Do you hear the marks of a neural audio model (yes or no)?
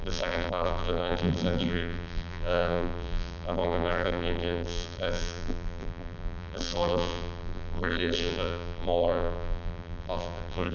yes